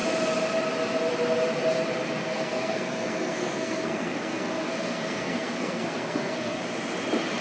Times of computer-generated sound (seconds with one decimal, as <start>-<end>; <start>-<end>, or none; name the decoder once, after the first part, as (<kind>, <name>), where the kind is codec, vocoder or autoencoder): 2.2-6.6 (codec, SNAC)